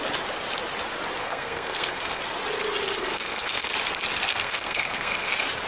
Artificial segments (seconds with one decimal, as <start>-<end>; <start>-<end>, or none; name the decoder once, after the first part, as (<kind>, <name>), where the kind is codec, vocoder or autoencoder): 1.2-2.2 (codec, SNAC); 3.0-3.7; 4.3-5.3